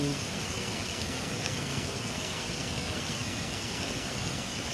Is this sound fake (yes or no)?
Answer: yes